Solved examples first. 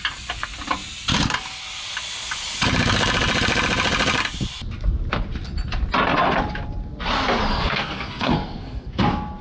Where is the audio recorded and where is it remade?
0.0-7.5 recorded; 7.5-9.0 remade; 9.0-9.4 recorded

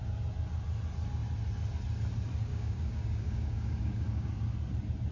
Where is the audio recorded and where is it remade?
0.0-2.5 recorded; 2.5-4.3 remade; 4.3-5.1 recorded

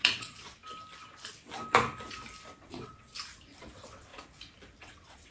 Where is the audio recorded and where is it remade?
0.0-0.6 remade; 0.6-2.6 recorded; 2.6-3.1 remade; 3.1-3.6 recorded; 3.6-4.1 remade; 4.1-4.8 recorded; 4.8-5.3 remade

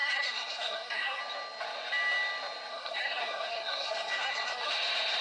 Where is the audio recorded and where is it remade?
0.0-1.2 remade; 1.2-2.7 recorded; 2.7-4.7 remade; 4.7-5.2 recorded

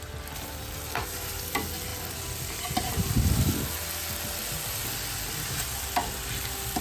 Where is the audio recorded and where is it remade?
0.0-6.8 recorded